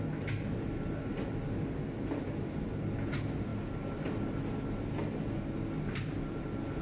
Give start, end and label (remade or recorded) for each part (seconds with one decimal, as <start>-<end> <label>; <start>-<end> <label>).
0.0-6.8 recorded